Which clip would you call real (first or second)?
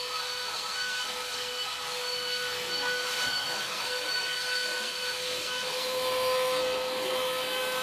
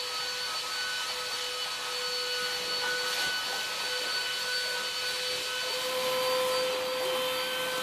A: second